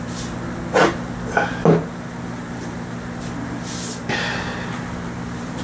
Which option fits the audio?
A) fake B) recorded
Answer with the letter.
B